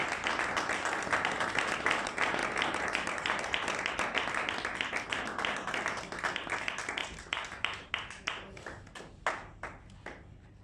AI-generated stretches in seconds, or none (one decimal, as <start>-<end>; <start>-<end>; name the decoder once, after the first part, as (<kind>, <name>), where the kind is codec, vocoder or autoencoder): 2.4-3.4 (vocoder, BigVGAN v2); 7.0-7.9